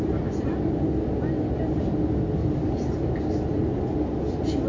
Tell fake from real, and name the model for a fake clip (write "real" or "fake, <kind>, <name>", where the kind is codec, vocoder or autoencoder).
real